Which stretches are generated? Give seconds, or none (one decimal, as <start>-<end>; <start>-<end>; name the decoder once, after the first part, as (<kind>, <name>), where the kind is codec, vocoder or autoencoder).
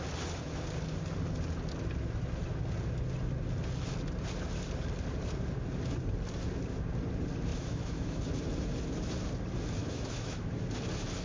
7.5-8.2 (autoencoder, DAC-VAE); 9.8-10.5